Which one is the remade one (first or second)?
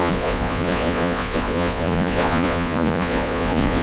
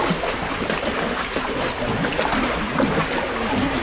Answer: first